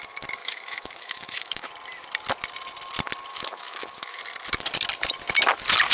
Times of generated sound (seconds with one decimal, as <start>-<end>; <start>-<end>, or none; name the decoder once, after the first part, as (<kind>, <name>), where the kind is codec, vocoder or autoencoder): 0.4-1.7 (autoencoder, DAC-VAE); 3.3-4.2